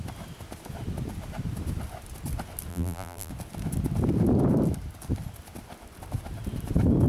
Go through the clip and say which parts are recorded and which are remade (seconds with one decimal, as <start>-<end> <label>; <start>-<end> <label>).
0.0-2.7 recorded; 2.7-3.3 remade; 3.3-7.1 recorded